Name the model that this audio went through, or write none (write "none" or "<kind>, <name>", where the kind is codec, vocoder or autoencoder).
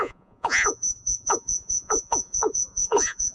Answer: vocoder, Vocos